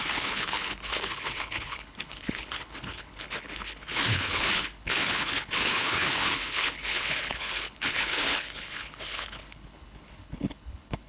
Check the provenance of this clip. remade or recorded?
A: remade